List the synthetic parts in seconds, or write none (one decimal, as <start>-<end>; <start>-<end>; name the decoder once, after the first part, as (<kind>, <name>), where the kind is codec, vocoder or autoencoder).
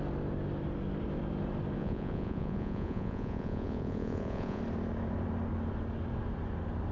1.8-4.6 (vocoder, Vocos)